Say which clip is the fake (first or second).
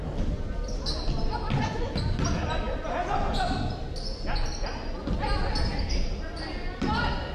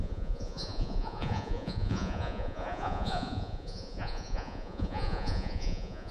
second